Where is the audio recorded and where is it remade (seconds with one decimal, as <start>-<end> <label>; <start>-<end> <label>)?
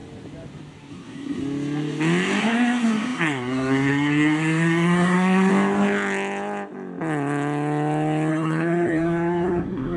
0.0-0.9 recorded; 0.9-1.4 remade; 1.4-2.4 recorded; 2.4-5.5 remade; 5.5-8.3 recorded; 8.3-10.0 remade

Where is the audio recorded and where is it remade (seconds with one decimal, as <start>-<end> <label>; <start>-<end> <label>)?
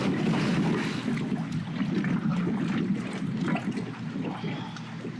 0.0-5.2 recorded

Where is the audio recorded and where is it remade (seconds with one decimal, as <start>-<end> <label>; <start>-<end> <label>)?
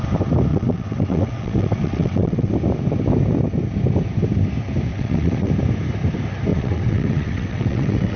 0.0-0.5 recorded; 0.5-2.5 remade; 2.5-4.9 recorded; 4.9-5.5 remade; 5.5-6.5 recorded; 6.5-8.2 remade